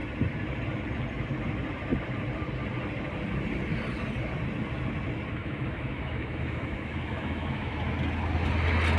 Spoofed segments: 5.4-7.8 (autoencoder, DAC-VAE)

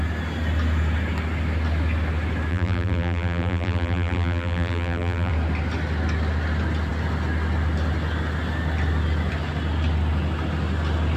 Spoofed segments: 2.5-5.3 (vocoder, BigVGAN v2)